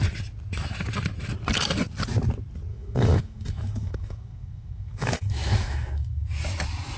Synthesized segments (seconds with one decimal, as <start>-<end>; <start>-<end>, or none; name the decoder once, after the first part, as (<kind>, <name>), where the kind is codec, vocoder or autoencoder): 2.7-6.3 (autoencoder, DAC-VAE)